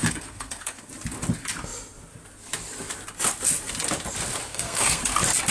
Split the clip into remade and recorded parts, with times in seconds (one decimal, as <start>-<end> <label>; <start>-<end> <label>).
0.0-0.9 remade; 0.9-4.5 recorded; 4.5-5.0 remade; 5.0-5.5 recorded